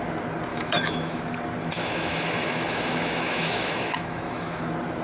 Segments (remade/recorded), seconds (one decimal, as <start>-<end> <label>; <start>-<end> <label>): 0.0-0.5 recorded; 0.5-1.2 remade; 1.2-1.6 recorded; 1.6-4.6 remade; 4.6-5.0 recorded